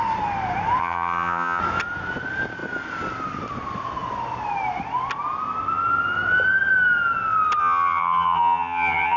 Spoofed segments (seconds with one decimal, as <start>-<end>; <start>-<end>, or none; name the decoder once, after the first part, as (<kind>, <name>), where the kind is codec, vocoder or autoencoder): 0.8-1.6 (vocoder, HiFi-GAN); 7.6-9.2